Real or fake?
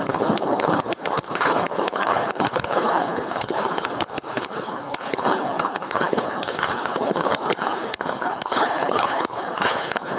fake